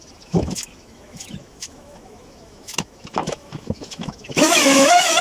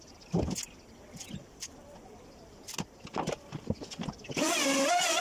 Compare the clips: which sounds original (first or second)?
second